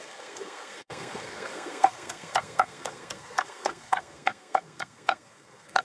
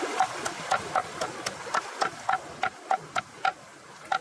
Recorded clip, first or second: second